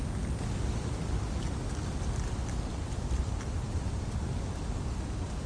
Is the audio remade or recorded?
recorded